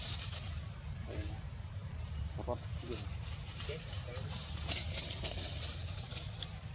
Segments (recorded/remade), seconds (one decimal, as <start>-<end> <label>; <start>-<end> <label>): 0.0-6.7 remade